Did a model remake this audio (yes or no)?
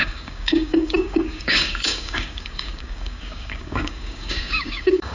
yes